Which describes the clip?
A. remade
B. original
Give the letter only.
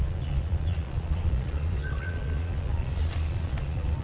A